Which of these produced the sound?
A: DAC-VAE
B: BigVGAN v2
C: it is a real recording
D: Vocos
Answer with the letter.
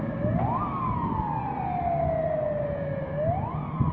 C